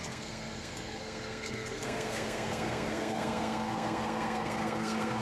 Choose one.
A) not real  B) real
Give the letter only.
A